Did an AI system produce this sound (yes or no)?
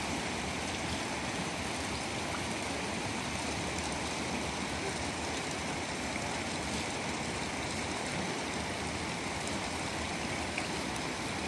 yes